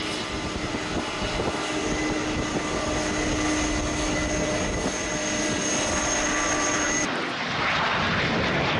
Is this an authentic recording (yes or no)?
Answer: yes